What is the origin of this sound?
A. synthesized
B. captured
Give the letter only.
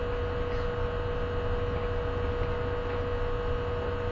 B